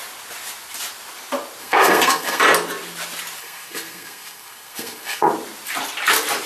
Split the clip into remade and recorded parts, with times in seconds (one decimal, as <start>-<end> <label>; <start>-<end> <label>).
0.0-1.6 recorded; 1.6-2.4 remade; 2.4-3.4 recorded; 3.4-5.3 remade; 5.3-6.5 recorded